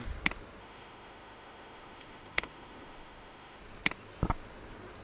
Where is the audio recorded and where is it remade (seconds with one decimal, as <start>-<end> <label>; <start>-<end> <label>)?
0.0-0.6 recorded; 0.6-3.6 remade; 3.6-5.0 recorded